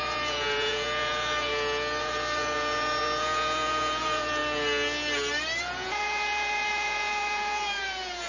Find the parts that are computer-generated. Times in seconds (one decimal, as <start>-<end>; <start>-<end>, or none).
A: 0.0-1.5; 2.0-4.4; 5.6-8.3